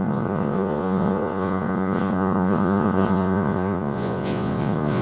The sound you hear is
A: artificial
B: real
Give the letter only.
A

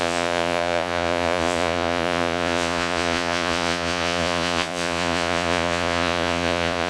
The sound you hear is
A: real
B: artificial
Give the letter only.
B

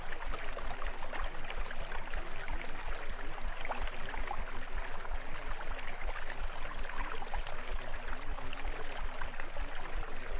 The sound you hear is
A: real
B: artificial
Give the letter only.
A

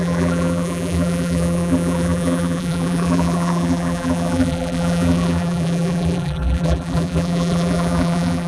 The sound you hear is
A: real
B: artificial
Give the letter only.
B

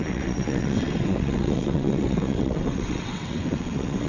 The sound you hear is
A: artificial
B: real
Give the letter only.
A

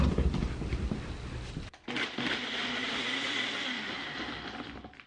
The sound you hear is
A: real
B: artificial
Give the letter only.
A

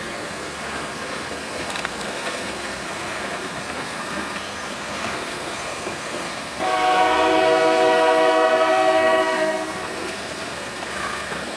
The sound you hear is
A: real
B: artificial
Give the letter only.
B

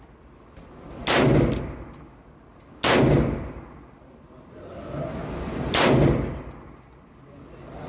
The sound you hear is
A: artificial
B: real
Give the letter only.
B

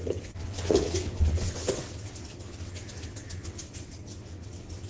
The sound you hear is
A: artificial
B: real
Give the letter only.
A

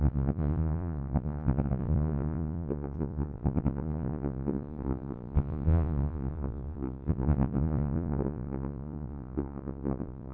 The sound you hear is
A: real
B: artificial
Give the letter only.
B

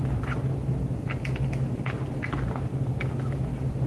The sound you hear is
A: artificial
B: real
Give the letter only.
B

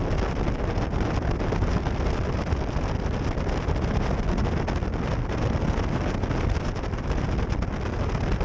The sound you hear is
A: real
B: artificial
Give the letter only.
A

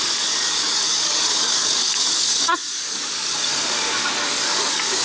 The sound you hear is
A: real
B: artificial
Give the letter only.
B